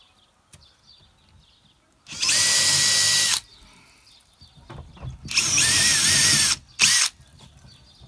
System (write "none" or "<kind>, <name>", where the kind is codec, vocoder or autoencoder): none